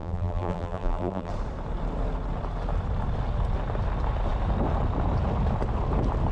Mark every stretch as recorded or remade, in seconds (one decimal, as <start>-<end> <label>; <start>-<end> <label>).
0.0-1.3 remade; 1.3-6.3 recorded